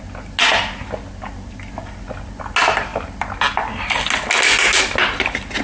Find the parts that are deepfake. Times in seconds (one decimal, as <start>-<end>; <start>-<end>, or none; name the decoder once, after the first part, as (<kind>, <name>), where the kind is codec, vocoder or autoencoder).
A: none